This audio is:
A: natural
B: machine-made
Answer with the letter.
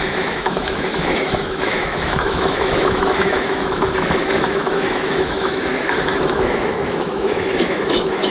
B